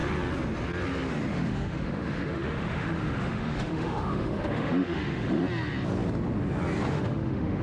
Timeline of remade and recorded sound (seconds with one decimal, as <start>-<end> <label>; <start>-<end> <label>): 0.0-1.3 recorded; 1.3-5.4 remade; 5.4-6.9 recorded; 6.9-7.6 remade